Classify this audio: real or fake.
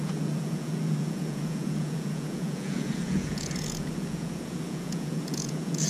fake